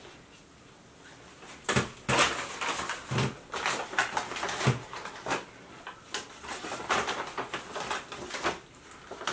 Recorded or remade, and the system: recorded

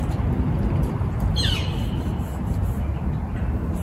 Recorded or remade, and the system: recorded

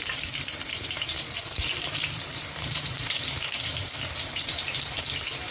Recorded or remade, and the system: remade, vocoder, BigVGAN v2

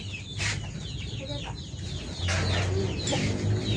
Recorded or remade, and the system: recorded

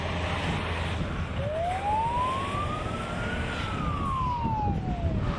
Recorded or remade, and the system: recorded